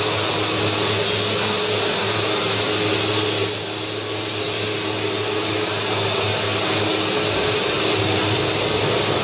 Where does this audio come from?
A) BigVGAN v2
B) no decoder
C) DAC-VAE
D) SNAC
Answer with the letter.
B